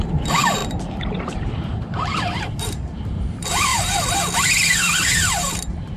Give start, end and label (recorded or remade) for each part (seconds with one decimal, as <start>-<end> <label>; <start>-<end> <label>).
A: 0.0-0.6 remade; 0.6-1.2 recorded; 1.2-6.0 remade